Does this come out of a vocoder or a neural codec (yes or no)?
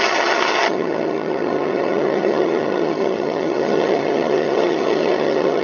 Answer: yes